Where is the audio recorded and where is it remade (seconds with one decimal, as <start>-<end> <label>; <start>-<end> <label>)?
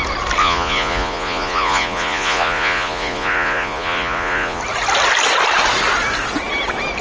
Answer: 0.0-0.4 recorded; 0.4-4.6 remade; 4.6-7.0 recorded